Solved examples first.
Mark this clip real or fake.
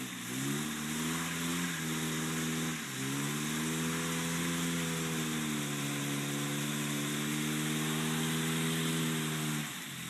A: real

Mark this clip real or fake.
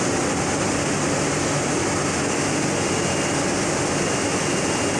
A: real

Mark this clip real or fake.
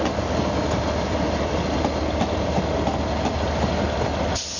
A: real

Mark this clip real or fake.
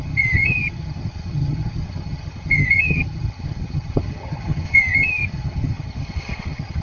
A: fake